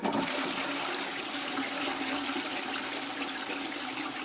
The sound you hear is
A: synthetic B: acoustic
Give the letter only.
B